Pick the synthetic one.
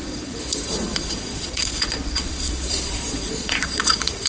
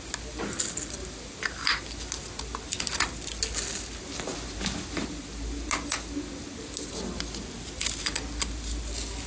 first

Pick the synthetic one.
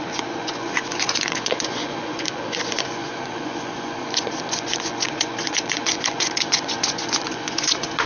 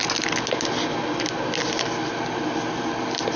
first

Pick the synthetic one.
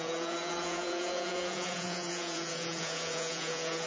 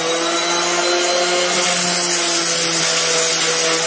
first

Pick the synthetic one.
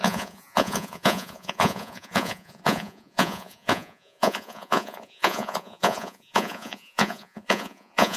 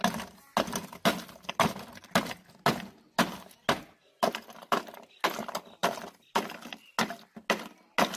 first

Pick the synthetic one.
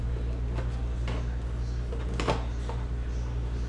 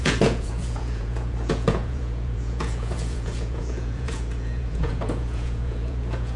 second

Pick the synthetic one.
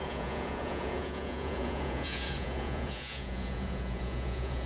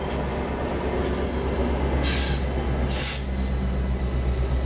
first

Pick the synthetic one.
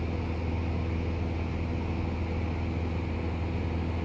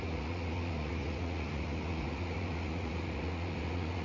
second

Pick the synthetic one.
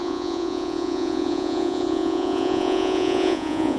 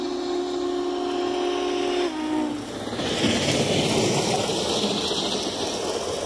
first